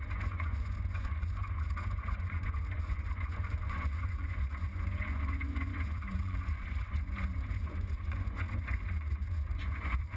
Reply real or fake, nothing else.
fake